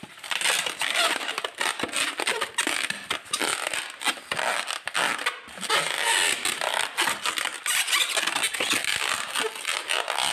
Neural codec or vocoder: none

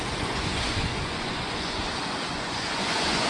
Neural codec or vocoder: vocoder, Vocos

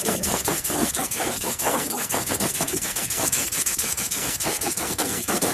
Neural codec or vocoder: codec, SNAC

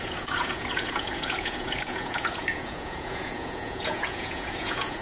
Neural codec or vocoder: vocoder, Vocos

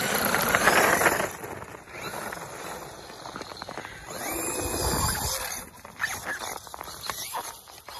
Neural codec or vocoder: none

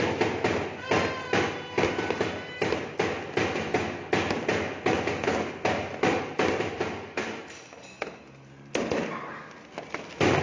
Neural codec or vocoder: none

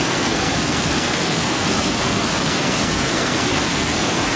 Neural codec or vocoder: codec, SNAC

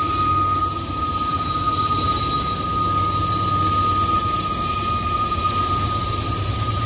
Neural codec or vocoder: none